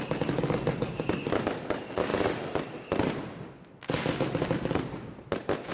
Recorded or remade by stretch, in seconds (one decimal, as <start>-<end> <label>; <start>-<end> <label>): 0.0-5.7 recorded

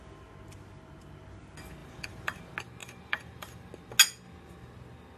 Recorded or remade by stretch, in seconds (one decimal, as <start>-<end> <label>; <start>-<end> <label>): 0.0-1.8 recorded; 1.8-2.4 remade; 2.4-2.8 recorded; 2.8-3.7 remade; 3.7-5.2 recorded

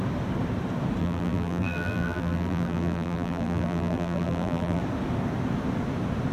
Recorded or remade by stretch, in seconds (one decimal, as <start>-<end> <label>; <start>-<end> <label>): 0.0-1.0 recorded; 1.0-4.8 remade; 4.8-6.3 recorded

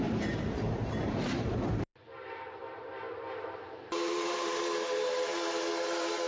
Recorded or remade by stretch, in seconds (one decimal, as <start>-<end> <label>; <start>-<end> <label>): 0.0-6.3 remade